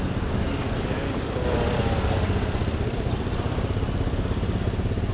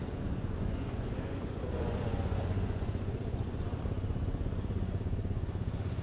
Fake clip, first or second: second